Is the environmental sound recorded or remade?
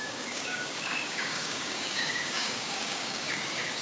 remade